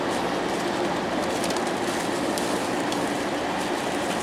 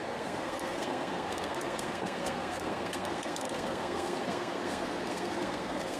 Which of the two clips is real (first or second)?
first